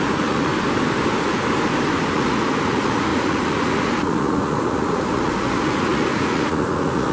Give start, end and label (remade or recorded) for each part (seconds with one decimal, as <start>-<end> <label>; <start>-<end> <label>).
0.0-0.5 remade; 0.5-2.1 recorded; 2.1-7.1 remade